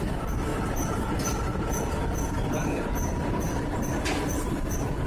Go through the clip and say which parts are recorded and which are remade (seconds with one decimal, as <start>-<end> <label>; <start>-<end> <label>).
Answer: 0.0-5.1 recorded